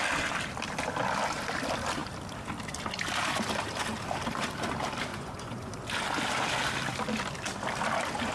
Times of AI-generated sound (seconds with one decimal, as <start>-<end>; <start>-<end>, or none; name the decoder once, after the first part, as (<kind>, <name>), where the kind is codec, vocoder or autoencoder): 5.1-5.7 (vocoder, Vocos)